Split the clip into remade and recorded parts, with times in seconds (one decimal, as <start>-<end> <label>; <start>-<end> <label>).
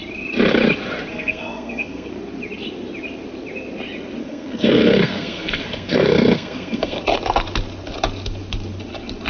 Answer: 0.0-1.1 recorded; 1.1-2.1 remade; 2.1-4.2 recorded; 4.2-7.0 remade; 7.0-9.3 recorded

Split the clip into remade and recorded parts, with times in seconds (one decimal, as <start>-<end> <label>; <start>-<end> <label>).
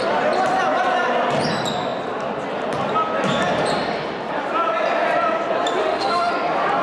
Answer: 0.0-5.8 recorded; 5.8-6.3 remade; 6.3-6.8 recorded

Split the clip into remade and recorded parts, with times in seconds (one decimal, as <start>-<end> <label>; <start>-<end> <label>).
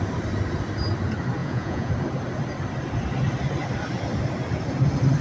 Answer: 0.0-1.4 recorded; 1.4-1.9 remade; 1.9-5.2 recorded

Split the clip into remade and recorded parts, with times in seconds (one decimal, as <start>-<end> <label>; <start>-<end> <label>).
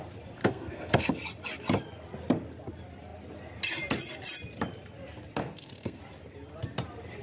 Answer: 0.0-0.4 recorded; 0.4-1.1 remade; 1.1-5.4 recorded; 5.4-6.0 remade; 6.0-7.2 recorded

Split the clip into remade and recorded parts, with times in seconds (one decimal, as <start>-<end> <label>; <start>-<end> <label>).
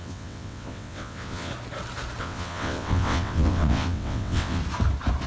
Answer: 0.0-1.5 remade; 1.5-2.2 recorded; 2.2-4.6 remade; 4.6-5.3 recorded